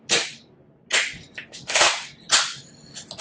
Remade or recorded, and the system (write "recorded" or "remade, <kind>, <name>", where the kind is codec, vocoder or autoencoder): recorded